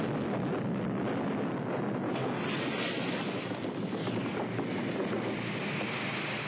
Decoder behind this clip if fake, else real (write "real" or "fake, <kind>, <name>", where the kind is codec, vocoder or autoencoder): real